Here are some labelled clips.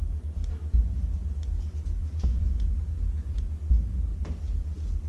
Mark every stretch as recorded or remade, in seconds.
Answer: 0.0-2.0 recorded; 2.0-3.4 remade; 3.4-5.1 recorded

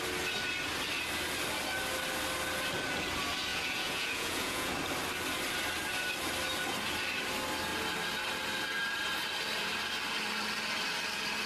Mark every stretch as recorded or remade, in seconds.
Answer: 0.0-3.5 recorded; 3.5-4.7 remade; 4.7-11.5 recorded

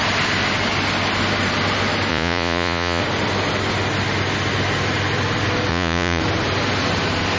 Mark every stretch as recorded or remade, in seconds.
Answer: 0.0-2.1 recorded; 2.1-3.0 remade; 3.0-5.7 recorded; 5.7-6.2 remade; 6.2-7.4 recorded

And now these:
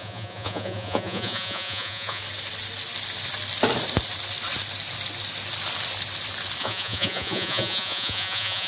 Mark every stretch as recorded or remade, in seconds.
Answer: 0.0-2.2 remade; 2.2-6.6 recorded; 6.6-8.7 remade